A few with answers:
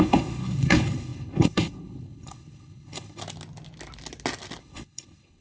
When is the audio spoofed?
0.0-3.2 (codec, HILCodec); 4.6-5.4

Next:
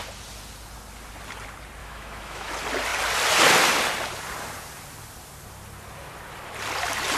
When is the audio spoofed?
1.8-2.5 (autoencoder, DAC-VAE)